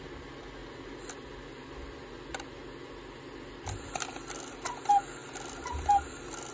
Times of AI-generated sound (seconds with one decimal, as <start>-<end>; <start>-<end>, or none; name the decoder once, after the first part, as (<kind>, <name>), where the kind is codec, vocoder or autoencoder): none